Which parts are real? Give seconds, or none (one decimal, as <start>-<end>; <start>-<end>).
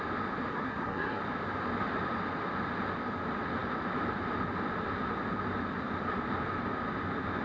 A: 0.0-0.5; 1.2-7.4